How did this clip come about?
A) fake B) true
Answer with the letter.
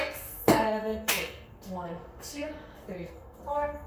A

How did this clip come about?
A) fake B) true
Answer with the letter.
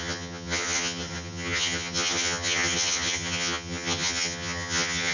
A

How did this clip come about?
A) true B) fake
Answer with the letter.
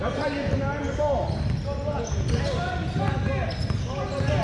A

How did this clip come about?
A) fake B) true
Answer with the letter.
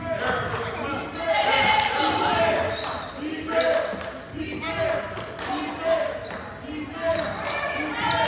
B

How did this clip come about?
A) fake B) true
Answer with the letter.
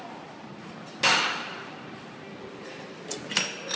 B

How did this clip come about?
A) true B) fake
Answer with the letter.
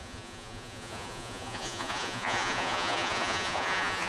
B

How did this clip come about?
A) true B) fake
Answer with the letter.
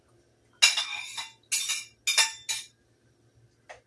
A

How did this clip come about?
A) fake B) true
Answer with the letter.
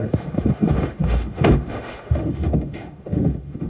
A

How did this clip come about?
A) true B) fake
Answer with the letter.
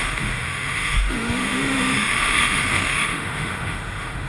B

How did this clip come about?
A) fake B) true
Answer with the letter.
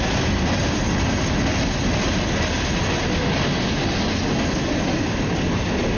B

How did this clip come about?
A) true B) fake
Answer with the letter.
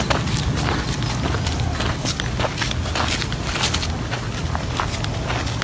A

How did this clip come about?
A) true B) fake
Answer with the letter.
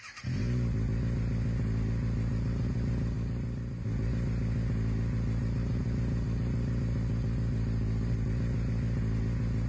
A